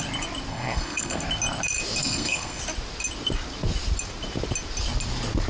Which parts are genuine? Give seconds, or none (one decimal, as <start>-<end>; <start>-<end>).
0.0-0.5; 1.2-2.0; 2.6-5.5